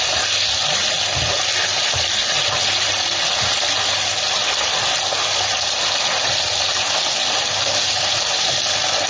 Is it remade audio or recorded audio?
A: recorded